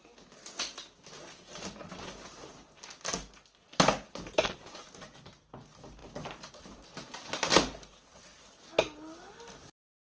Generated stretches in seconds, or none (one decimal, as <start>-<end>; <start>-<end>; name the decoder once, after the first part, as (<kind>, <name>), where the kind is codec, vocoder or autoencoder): none